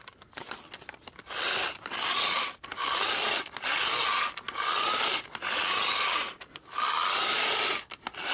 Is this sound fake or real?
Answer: real